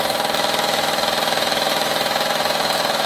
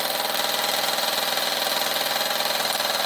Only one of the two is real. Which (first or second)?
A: second